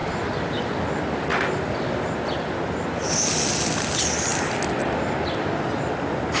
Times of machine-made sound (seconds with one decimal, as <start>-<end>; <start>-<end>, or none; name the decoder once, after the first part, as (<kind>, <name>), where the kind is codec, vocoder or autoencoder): 1.3-2.1 (vocoder, BigVGAN v2)